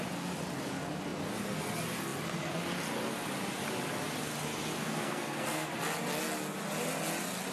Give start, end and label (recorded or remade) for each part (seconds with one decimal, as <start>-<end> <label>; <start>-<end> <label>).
0.0-4.8 recorded; 4.8-5.7 remade; 5.7-7.5 recorded

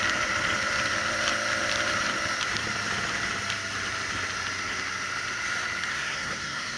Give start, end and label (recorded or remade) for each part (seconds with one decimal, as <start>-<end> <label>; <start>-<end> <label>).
0.0-5.9 recorded; 5.9-6.8 remade

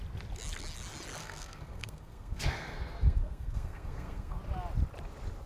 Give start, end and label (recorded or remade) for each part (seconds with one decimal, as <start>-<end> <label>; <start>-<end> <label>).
0.0-1.2 recorded; 1.2-4.4 remade; 4.4-5.5 recorded

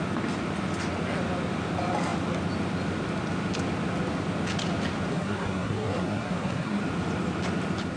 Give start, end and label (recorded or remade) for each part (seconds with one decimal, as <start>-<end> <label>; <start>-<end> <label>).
0.0-5.1 recorded; 5.1-6.8 remade; 6.8-8.0 recorded

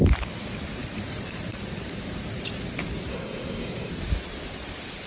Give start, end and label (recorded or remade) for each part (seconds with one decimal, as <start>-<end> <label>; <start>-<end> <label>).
0.0-3.1 recorded; 3.1-3.9 remade; 3.9-5.1 recorded

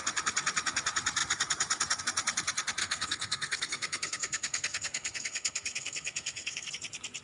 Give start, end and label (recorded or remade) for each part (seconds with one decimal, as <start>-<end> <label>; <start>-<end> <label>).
0.0-2.8 recorded; 2.8-6.7 remade; 6.7-7.2 recorded

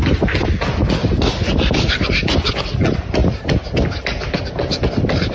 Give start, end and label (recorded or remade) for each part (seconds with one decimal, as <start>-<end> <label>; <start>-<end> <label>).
0.0-5.3 recorded